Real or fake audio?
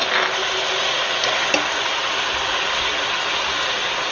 real